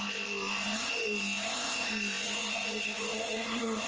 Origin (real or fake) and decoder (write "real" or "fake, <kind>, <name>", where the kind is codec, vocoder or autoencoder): fake, codec, ZipCodec